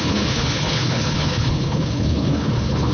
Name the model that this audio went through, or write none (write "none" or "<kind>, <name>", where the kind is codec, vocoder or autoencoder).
codec, HILCodec